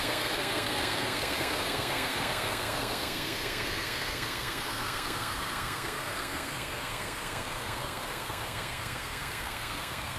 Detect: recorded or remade remade